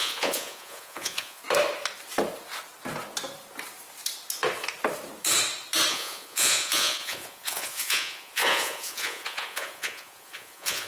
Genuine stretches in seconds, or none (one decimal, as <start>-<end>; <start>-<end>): 1.4-5.9